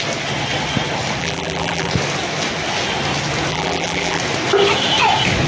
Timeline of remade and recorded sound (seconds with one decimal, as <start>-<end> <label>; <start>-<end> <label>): 0.0-1.2 recorded; 1.2-1.9 remade; 1.9-3.5 recorded; 3.5-4.2 remade; 4.2-5.5 recorded